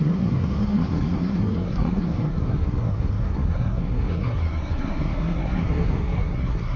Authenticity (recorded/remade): remade